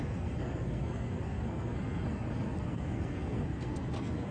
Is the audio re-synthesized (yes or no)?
yes